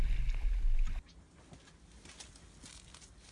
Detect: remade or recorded recorded